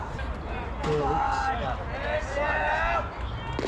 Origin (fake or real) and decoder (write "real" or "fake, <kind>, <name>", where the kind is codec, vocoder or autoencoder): real